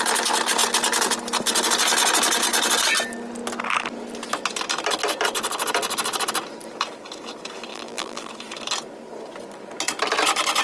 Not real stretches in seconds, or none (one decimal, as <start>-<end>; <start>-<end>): 7.7-8.3